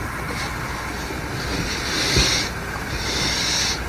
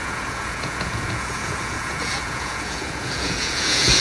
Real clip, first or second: first